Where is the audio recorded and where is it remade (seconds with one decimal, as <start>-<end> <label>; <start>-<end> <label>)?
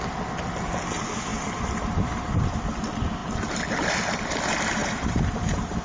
0.0-1.3 recorded; 1.3-2.6 remade; 2.6-4.8 recorded; 4.8-5.8 remade